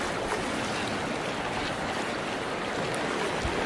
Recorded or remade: recorded